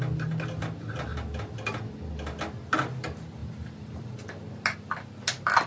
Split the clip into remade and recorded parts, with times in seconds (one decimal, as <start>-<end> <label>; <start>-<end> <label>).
0.0-3.4 recorded; 3.4-4.1 remade; 4.1-5.7 recorded

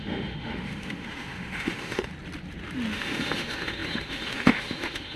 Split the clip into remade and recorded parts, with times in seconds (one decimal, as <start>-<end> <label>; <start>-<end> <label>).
0.0-2.1 remade; 2.1-2.9 recorded; 2.9-5.2 remade

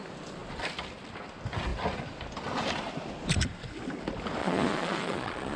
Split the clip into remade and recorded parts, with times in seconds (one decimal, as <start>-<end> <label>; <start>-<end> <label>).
0.0-4.4 recorded; 4.4-5.6 remade

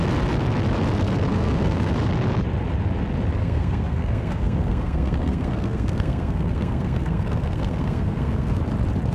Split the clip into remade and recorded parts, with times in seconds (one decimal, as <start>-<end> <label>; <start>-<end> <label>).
0.0-1.3 recorded; 1.3-1.9 remade; 1.9-3.4 recorded; 3.4-8.6 remade; 8.6-9.1 recorded

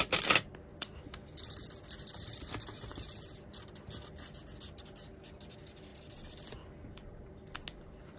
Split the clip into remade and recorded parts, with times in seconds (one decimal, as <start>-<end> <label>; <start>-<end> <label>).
0.0-8.2 recorded